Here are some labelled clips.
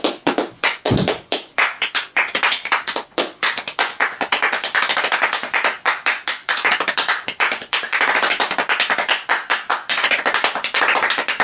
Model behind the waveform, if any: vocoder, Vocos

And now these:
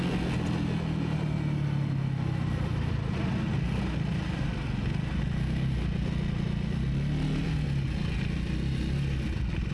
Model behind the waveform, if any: none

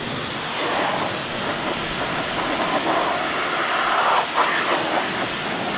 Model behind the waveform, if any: none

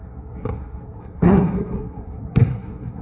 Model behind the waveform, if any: codec, SNAC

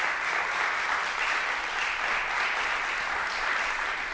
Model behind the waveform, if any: none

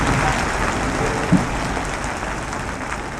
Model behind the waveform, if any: none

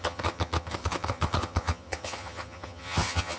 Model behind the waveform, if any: vocoder, HiFi-GAN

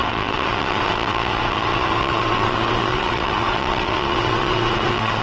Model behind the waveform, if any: vocoder, WaveNeXt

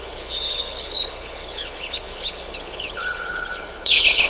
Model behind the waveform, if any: codec, HILCodec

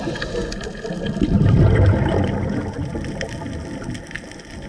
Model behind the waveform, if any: none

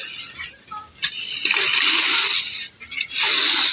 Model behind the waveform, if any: none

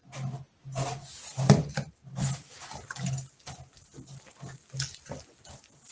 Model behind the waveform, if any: none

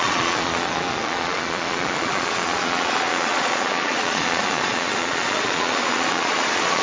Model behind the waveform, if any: vocoder, Vocos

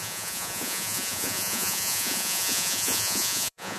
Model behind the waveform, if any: vocoder, Vocos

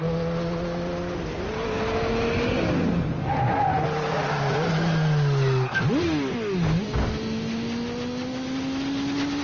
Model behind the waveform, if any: none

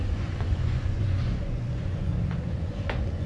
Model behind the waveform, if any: vocoder, Vocos